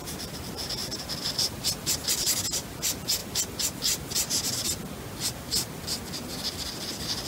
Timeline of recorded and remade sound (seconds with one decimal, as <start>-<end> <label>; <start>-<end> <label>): 0.0-3.2 remade; 3.2-6.7 recorded; 6.7-7.3 remade